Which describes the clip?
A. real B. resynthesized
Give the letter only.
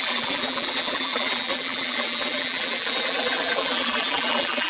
B